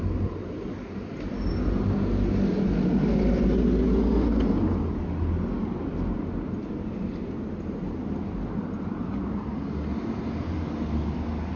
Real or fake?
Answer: real